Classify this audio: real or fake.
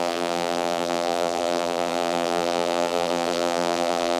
fake